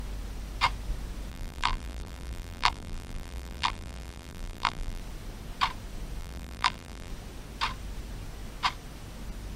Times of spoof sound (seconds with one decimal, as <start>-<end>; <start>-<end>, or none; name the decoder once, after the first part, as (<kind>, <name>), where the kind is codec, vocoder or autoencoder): 1.3-5.0 (vocoder, BigVGAN v2); 6.2-7.1